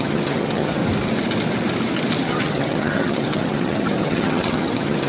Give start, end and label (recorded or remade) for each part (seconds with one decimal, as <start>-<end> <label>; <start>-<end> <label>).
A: 0.0-0.8 remade; 0.8-2.2 recorded; 2.2-5.1 remade